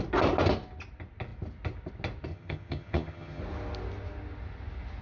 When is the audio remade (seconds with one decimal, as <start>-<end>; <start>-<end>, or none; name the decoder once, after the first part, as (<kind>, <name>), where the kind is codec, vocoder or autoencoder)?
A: 2.3-3.4 (vocoder, HiFi-GAN)